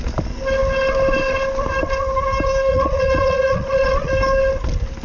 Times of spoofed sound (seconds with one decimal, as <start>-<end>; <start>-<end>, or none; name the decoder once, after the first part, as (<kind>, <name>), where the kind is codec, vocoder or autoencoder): 2.7-4.1 (vocoder, Vocos)